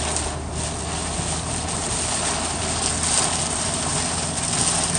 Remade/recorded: recorded